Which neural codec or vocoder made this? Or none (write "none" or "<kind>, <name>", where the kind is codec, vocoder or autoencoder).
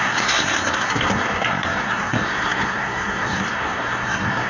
codec, SNAC